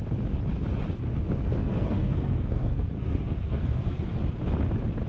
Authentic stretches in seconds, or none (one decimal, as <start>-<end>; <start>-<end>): 0.0-1.1; 4.2-5.1